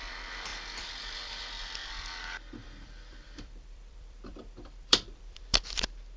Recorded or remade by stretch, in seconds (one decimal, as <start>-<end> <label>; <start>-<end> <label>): 0.0-0.5 recorded; 0.5-1.4 remade; 1.4-2.6 recorded; 2.6-5.6 remade; 5.6-6.2 recorded